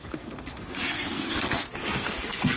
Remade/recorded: remade